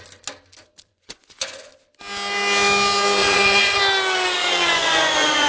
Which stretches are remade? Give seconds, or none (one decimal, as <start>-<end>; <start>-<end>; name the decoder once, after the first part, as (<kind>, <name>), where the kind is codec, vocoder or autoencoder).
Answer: 0.9-1.7 (vocoder, Vocos); 3.2-3.8; 4.4-5.5